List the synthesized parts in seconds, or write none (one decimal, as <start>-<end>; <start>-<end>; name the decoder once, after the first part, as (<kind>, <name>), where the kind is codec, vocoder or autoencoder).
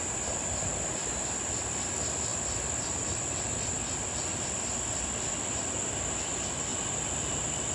2.3-4.5 (vocoder, BigVGAN v2); 6.7-7.3